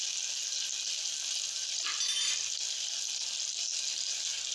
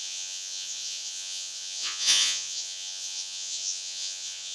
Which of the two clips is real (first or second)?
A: first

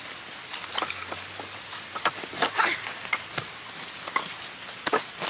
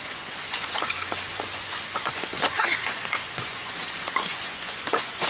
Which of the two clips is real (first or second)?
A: first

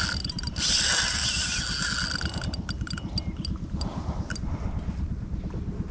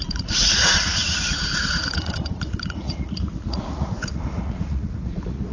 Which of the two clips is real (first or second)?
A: first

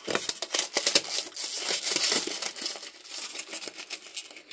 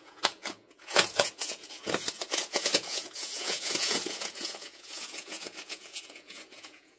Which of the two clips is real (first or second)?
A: first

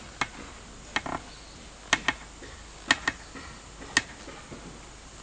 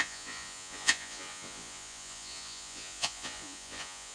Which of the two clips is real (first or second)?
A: first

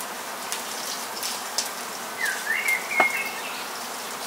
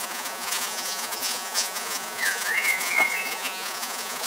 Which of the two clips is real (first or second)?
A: first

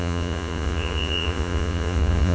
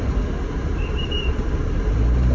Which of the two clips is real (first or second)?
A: second